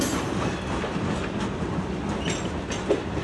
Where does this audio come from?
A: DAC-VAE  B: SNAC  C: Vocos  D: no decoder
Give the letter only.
D